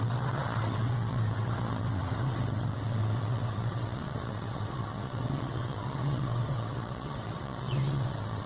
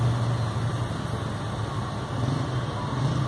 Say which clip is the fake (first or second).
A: first